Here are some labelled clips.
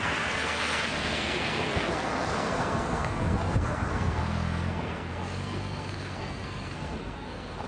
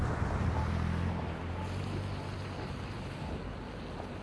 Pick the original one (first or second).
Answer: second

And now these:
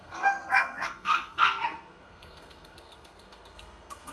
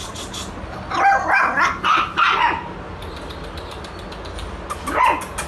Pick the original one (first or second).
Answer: second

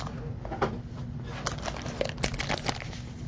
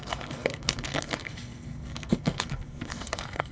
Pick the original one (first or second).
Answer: first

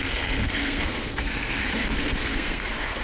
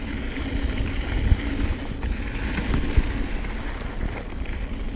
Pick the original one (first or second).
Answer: second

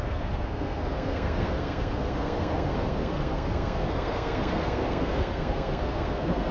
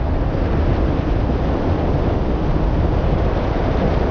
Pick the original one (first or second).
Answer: second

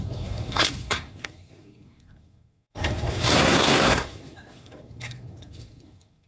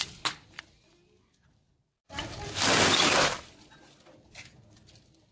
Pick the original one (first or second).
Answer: second